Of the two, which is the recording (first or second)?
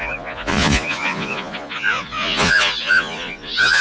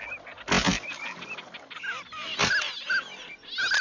second